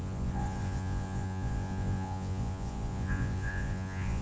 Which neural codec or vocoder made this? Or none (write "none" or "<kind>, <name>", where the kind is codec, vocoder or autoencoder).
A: vocoder, Vocos